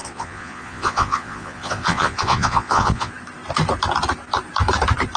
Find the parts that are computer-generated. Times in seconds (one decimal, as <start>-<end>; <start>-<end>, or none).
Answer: 0.0-3.1